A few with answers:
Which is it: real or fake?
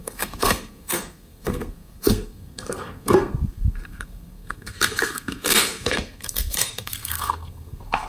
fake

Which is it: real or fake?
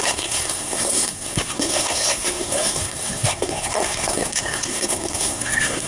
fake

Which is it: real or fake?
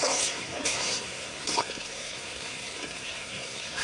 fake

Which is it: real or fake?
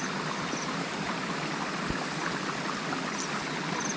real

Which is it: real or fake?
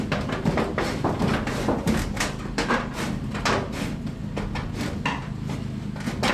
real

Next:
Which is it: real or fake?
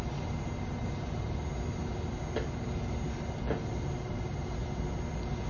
real